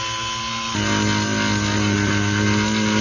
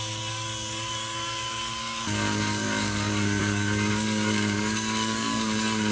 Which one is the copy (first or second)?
second